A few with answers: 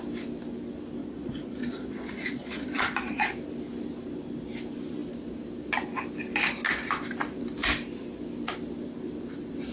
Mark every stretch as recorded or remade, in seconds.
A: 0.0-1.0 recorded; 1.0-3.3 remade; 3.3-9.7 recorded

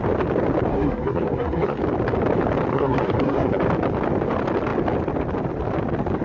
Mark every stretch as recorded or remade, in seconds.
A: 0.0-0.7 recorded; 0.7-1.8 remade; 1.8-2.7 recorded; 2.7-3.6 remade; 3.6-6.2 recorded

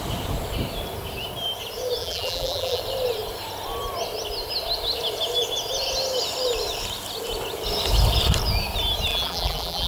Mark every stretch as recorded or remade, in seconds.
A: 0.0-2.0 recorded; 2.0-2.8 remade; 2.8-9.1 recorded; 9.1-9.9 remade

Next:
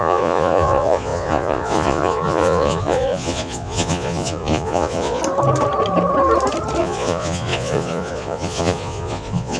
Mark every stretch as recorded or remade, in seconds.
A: 0.0-5.2 remade; 5.2-6.8 recorded; 6.8-9.6 remade